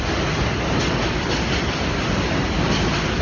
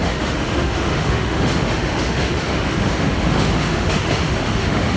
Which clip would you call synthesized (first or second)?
second